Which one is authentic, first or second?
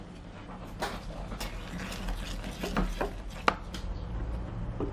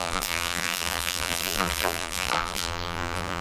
first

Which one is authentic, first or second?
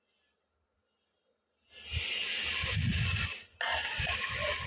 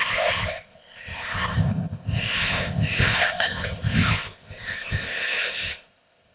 first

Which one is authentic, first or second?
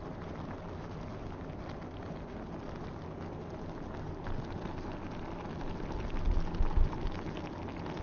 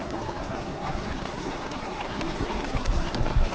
first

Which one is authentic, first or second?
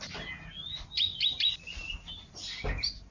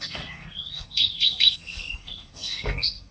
first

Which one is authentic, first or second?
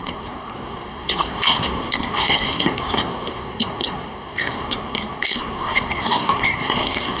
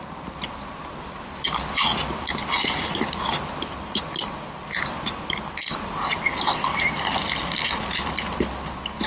second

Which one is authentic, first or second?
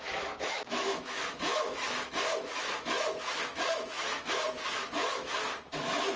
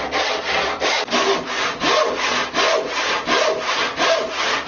second